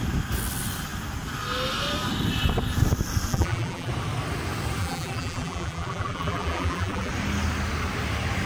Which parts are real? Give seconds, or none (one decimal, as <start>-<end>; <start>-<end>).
0.0-3.3; 3.9-4.8; 7.1-8.5